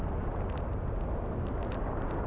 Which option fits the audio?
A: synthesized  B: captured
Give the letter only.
B